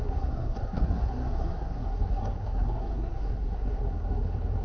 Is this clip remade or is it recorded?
remade